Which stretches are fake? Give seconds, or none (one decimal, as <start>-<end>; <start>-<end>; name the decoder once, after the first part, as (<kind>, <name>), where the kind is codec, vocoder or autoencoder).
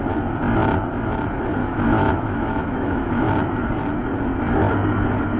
1.6-3.2 (autoencoder, DAC-VAE)